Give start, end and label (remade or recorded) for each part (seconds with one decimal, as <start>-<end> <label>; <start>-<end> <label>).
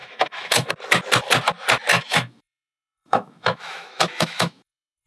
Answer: 0.0-0.7 remade; 0.7-1.9 recorded; 1.9-5.1 remade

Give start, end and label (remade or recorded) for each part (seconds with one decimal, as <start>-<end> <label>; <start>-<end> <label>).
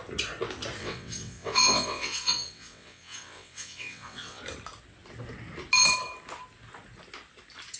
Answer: 0.0-0.8 recorded; 0.8-4.4 remade; 4.4-7.8 recorded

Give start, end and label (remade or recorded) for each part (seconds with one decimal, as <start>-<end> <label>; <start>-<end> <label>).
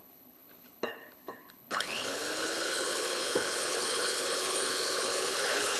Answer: 0.0-5.8 remade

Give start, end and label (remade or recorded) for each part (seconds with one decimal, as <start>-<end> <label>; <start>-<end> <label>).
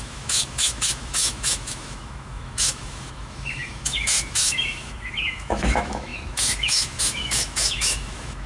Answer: 0.0-8.5 remade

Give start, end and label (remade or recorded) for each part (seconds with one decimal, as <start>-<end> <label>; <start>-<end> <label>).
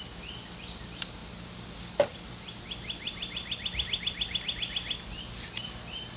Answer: 0.0-6.2 recorded